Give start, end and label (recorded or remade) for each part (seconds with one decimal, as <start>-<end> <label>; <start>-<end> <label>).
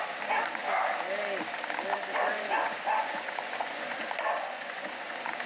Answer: 0.0-1.9 recorded; 1.9-5.5 remade